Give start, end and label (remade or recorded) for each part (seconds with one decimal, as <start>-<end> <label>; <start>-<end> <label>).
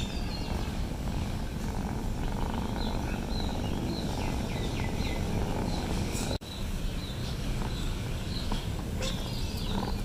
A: 0.0-0.7 recorded; 0.7-1.4 remade; 1.4-5.6 recorded; 5.6-6.8 remade; 6.8-7.2 recorded; 7.2-9.1 remade; 9.1-10.0 recorded